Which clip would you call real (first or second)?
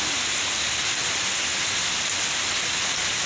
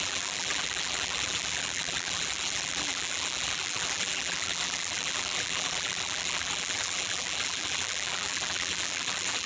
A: first